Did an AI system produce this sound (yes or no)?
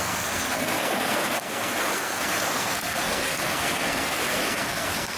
yes